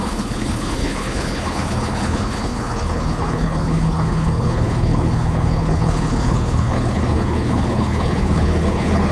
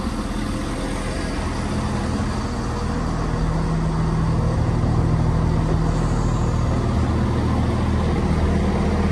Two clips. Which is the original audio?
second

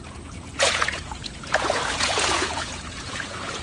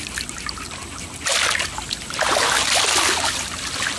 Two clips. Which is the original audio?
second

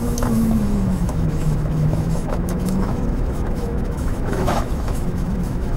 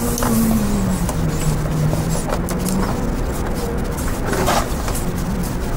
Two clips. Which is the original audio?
second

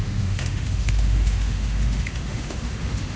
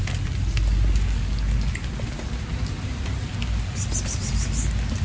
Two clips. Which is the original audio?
second